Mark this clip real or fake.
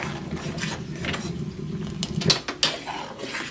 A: real